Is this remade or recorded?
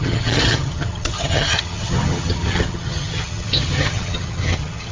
remade